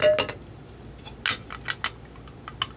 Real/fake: real